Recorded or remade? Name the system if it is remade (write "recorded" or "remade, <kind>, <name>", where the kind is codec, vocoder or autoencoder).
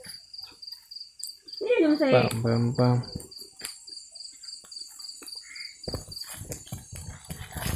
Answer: recorded